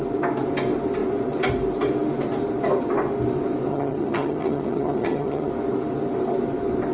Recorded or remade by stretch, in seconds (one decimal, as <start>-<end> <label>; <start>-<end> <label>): 0.0-3.7 recorded; 3.7-5.5 remade; 5.5-6.9 recorded